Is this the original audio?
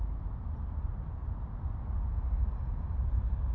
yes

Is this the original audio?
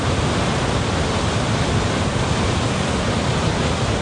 yes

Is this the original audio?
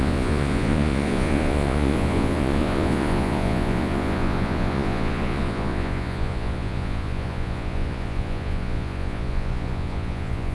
no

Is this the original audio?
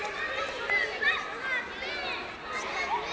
yes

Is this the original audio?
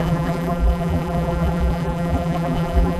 no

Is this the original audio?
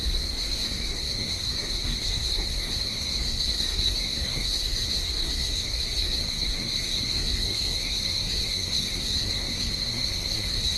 no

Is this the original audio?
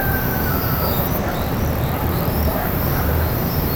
no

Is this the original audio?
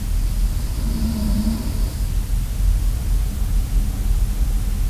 yes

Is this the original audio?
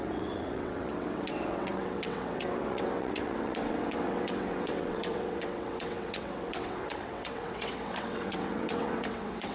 no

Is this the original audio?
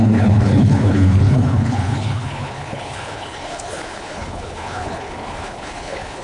no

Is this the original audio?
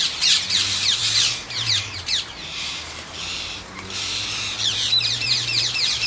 no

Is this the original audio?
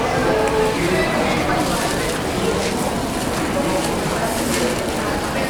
yes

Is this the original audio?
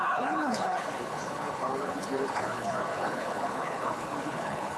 no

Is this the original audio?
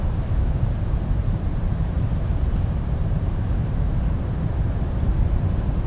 no